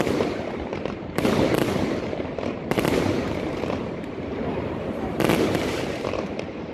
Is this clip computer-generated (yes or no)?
yes